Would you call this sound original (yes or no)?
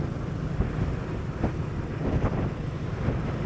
yes